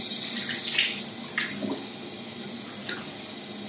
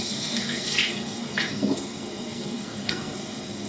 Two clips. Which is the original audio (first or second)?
first